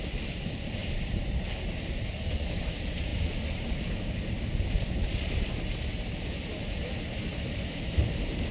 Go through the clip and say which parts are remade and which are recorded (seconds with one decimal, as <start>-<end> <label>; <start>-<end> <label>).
0.0-8.5 remade